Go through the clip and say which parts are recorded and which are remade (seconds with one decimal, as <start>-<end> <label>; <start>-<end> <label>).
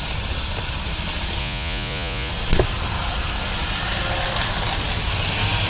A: 0.0-1.4 recorded; 1.4-2.3 remade; 2.3-5.7 recorded